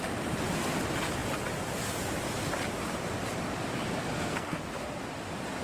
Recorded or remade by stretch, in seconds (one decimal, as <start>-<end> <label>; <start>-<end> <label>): 0.0-4.0 recorded; 4.0-4.6 remade; 4.6-5.6 recorded